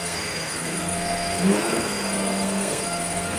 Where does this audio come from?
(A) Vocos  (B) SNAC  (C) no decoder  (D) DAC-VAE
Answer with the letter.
B